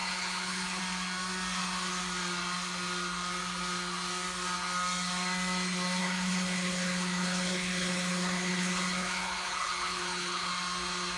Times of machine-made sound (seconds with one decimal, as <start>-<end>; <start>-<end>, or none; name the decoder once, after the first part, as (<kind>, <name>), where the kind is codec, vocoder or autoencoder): 0.0-0.8 (codec, HILCodec); 6.0-10.5